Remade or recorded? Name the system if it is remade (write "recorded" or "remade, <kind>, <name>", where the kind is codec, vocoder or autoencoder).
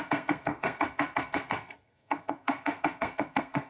remade, codec, SNAC